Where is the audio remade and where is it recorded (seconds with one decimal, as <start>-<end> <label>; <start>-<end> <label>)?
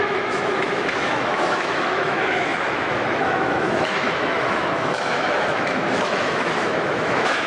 0.0-7.5 remade